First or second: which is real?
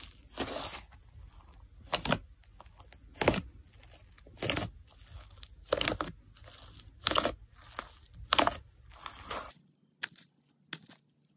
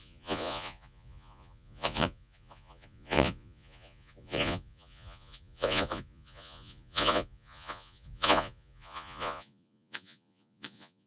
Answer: first